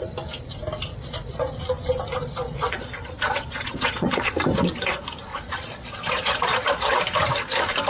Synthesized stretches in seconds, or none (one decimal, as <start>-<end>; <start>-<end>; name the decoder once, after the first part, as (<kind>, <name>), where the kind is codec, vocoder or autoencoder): 0.9-1.6 (vocoder, Vocos); 2.2-4.4; 5.3-7.0